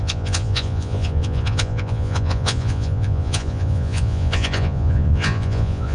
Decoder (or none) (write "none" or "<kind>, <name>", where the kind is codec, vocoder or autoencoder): vocoder, Vocos